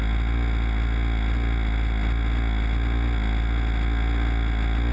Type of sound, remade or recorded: recorded